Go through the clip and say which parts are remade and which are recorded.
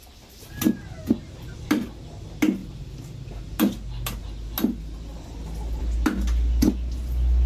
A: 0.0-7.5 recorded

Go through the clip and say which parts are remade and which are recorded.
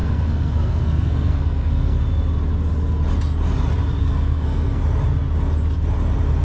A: 0.0-2.0 remade; 2.0-4.0 recorded; 4.0-4.8 remade; 4.8-6.4 recorded